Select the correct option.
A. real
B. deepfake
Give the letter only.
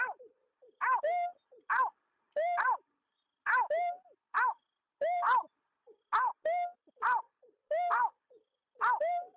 A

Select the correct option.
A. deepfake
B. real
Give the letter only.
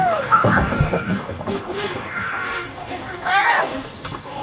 A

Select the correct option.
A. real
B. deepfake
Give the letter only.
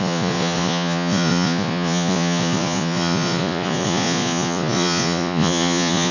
B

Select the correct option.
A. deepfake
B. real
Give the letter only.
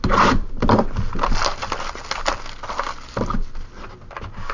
B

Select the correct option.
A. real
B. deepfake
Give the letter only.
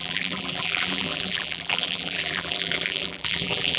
B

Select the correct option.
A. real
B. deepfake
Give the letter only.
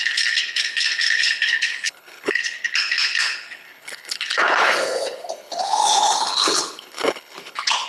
B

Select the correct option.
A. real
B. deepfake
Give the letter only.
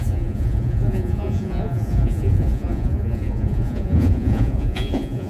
B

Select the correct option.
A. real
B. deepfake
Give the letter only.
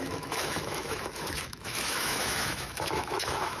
B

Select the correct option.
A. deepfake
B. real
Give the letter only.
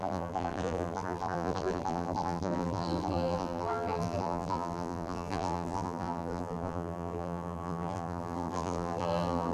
A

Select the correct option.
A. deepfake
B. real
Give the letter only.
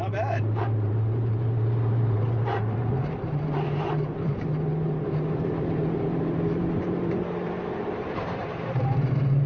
A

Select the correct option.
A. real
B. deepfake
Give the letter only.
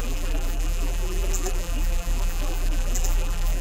B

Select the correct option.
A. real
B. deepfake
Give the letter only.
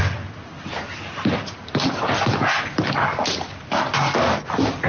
A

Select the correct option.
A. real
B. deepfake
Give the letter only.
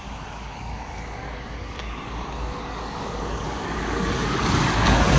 B